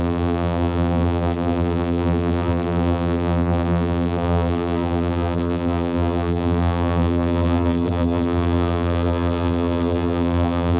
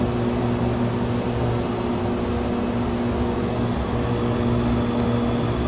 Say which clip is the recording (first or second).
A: second